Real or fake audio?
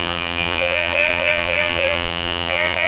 fake